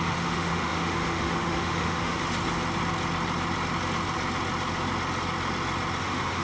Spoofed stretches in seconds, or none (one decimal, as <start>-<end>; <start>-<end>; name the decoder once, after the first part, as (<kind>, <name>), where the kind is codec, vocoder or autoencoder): 0.0-2.2 (autoencoder, DAC-VAE); 6.0-6.4